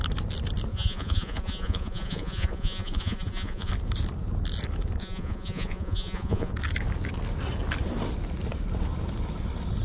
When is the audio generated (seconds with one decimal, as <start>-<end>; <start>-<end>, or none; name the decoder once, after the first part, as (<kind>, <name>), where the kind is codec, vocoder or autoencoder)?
0.7-3.7 (vocoder, Vocos); 5.0-6.5